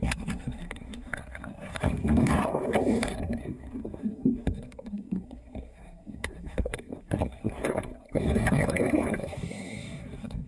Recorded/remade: remade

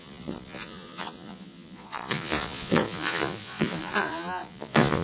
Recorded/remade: remade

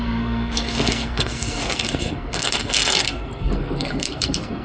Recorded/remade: remade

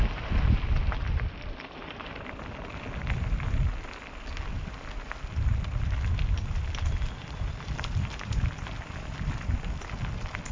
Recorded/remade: recorded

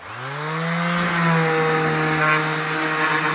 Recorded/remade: recorded